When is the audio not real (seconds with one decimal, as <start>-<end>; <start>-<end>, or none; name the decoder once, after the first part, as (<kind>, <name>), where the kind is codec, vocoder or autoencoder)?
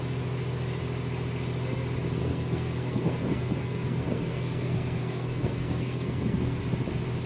2.2-6.6 (codec, SNAC)